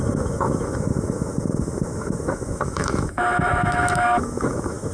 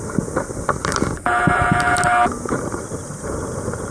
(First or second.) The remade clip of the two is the first